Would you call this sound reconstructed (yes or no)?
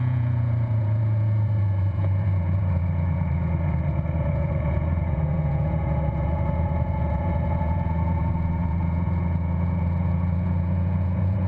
yes